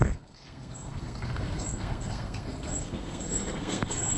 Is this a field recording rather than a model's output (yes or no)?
no